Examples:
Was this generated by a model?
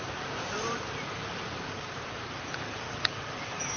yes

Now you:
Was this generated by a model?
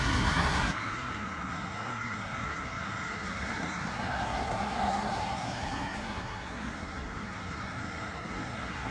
yes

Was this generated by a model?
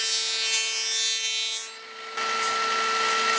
no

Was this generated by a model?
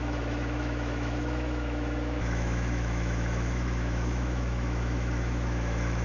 yes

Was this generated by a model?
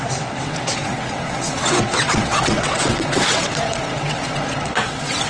yes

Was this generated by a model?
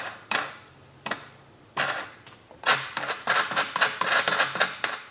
yes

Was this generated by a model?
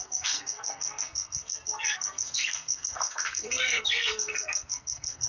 yes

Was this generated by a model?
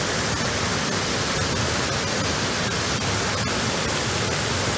no